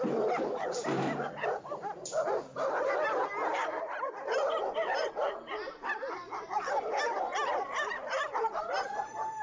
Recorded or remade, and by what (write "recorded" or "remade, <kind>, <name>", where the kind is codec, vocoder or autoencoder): remade, vocoder, BigVGAN v2